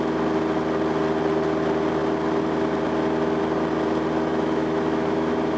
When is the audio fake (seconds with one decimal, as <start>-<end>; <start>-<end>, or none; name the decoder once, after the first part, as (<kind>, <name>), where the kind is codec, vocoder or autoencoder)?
4.3-5.6 (autoencoder, DAC-VAE)